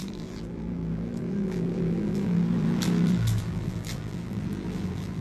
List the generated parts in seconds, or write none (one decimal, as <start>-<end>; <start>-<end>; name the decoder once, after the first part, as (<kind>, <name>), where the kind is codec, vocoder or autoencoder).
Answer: 0.0-5.2 (vocoder, BigVGAN v2)